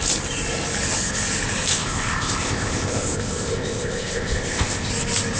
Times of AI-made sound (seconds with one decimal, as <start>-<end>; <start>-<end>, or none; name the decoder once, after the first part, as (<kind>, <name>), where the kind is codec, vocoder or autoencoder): 1.7-4.9 (codec, ZipCodec)